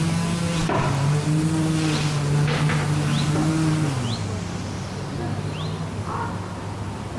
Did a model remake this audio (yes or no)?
yes